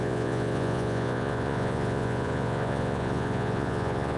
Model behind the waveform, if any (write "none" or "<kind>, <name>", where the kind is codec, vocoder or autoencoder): vocoder, Vocos